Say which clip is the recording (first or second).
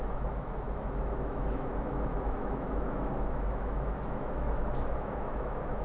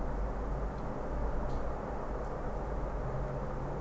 second